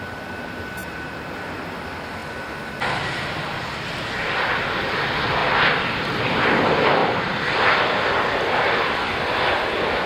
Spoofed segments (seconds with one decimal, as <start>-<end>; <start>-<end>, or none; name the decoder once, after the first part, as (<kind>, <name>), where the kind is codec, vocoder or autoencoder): 0.8-1.4 (vocoder, BigVGAN v2); 7.0-7.7